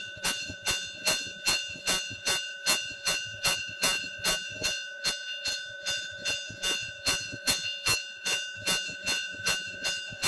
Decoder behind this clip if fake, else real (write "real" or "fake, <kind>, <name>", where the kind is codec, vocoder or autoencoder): fake, vocoder, Vocos